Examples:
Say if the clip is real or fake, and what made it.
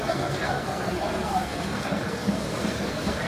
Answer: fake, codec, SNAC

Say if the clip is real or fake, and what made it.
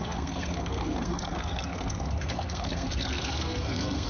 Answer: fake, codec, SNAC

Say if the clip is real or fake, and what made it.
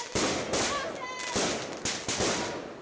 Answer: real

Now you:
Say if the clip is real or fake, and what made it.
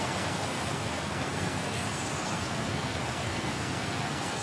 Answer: fake, codec, SNAC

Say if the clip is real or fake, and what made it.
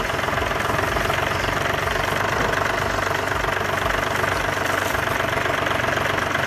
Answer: real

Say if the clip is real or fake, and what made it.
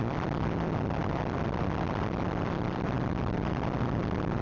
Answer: fake, vocoder, BigVGAN v2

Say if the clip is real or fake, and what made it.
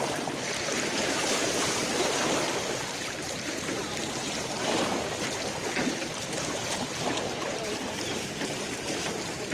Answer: fake, vocoder, BigVGAN v2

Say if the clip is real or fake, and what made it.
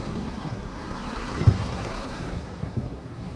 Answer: fake, codec, SNAC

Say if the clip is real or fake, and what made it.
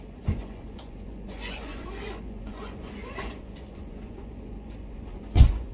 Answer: fake, vocoder, Vocos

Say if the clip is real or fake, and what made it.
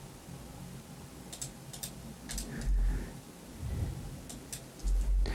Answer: real